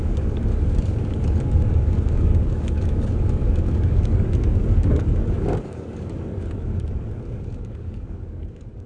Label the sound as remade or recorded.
remade